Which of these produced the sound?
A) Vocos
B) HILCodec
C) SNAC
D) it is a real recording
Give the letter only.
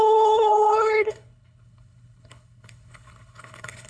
B